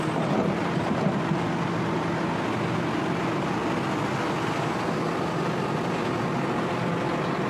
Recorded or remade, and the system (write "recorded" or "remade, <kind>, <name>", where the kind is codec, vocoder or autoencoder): recorded